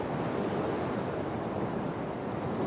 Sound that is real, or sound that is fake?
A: real